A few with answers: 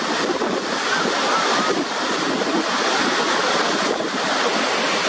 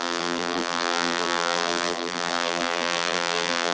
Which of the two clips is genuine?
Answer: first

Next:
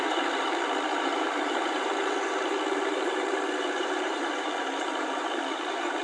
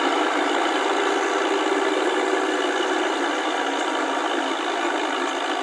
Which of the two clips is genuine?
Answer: second